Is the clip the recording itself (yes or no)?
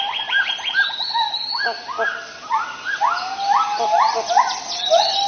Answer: yes